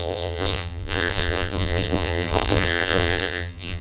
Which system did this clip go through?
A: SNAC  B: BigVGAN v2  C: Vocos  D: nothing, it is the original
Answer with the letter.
B